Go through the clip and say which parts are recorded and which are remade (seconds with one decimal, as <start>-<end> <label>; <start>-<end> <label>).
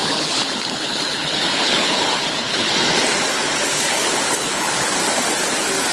0.0-2.7 remade; 2.7-3.7 recorded; 3.7-5.0 remade; 5.0-5.9 recorded